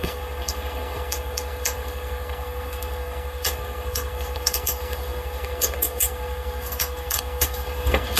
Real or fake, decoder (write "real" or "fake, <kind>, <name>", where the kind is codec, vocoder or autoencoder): fake, codec, SNAC